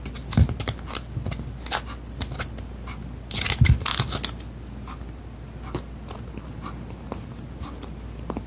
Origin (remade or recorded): recorded